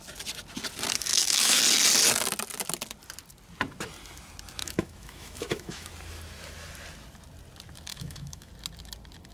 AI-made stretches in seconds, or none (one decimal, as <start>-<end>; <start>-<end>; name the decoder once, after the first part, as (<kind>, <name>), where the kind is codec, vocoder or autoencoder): 1.1-1.6 (autoencoder, DAC-VAE); 4.6-5.9; 7.9-8.5